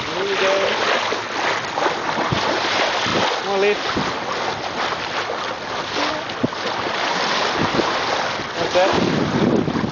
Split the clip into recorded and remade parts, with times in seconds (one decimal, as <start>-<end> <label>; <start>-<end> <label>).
0.0-9.9 recorded